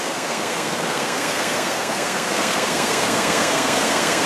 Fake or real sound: fake